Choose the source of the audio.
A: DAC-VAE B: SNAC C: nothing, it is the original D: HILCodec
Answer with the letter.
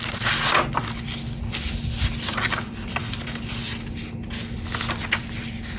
C